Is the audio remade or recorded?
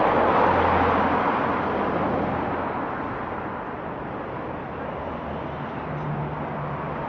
recorded